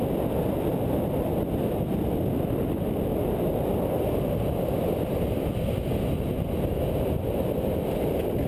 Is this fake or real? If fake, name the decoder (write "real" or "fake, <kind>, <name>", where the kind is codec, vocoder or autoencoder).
real